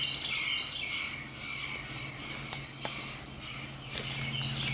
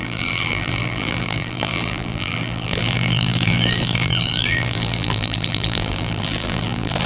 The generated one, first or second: second